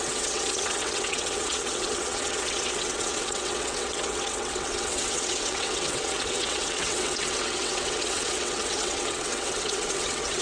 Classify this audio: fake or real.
fake